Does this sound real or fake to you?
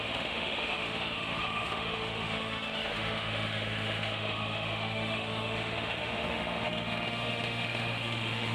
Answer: fake